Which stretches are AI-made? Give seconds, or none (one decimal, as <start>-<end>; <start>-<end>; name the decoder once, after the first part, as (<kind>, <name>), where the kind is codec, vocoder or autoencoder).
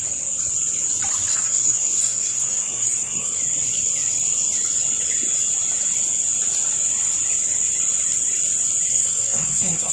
1.3-3.4 (codec, SNAC); 8.9-9.9